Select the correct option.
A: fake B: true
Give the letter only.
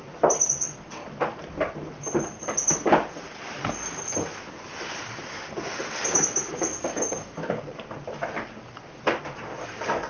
B